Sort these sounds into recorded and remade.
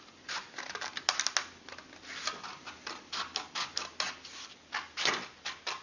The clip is recorded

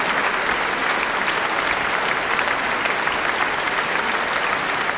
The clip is recorded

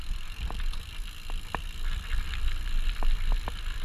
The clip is recorded